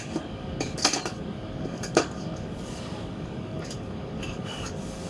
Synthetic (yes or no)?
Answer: yes